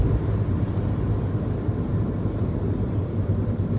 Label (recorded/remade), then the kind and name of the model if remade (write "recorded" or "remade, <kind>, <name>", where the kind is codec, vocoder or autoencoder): remade, vocoder, BigVGAN v2